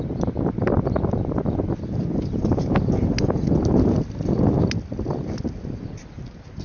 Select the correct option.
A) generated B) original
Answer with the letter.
B